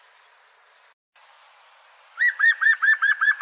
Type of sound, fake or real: real